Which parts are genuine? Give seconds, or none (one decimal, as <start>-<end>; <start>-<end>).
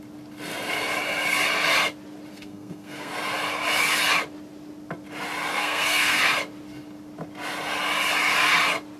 0.0-2.3; 3.1-5.5; 6.2-9.0